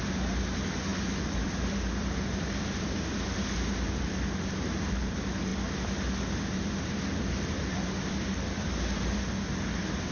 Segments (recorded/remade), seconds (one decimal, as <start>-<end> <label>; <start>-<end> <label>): 0.0-10.1 recorded